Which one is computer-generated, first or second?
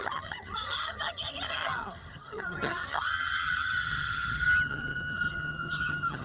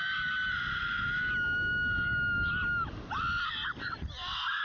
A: first